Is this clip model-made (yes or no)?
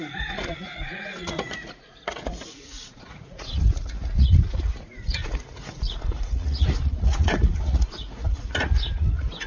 yes